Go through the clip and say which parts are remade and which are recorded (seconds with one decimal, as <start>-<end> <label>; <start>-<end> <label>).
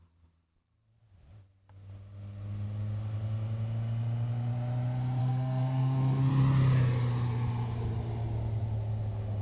0.0-5.2 recorded; 5.2-6.3 remade; 6.3-9.4 recorded